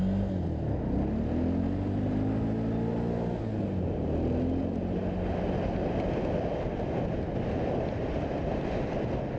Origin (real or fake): real